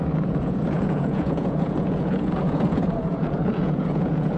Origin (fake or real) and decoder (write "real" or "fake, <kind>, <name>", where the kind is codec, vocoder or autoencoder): fake, vocoder, Vocos